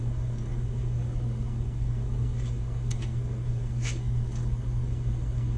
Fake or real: fake